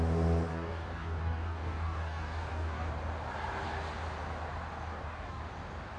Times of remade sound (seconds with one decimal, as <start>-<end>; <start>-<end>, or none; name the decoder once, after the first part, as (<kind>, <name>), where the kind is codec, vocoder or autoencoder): 0.5-2.9 (codec, DAC); 4.9-5.4